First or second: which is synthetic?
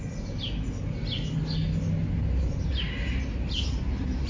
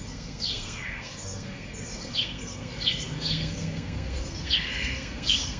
second